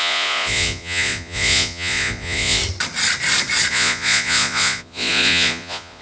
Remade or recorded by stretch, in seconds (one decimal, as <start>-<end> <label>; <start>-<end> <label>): 0.0-2.6 remade; 2.6-3.7 recorded; 3.7-6.0 remade